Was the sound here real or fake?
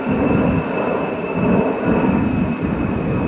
real